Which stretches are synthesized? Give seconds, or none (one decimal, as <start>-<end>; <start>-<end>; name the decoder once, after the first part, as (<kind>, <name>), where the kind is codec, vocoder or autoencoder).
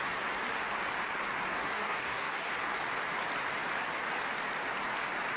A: 1.5-2.6 (codec, SNAC)